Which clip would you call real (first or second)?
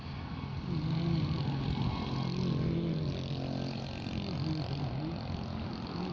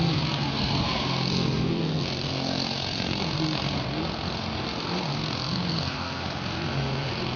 first